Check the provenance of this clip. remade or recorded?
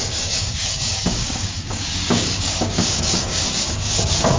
remade